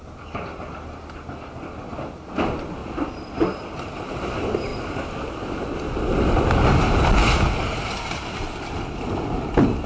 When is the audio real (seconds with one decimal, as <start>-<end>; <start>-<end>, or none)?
0.0-2.8; 4.3-9.9